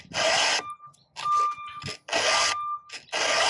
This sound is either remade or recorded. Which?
recorded